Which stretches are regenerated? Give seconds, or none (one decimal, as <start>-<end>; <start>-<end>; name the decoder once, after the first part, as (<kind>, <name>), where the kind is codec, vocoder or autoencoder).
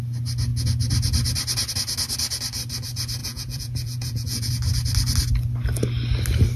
3.2-4.5 (vocoder, Vocos)